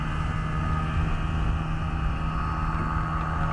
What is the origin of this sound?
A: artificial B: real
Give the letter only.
B